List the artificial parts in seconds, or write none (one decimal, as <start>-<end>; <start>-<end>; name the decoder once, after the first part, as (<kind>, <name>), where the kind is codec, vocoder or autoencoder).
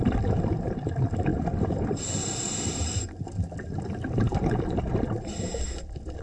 0.0-4.3 (vocoder, BigVGAN v2); 4.9-6.2